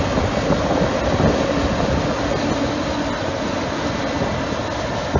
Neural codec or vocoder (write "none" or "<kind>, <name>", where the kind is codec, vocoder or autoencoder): none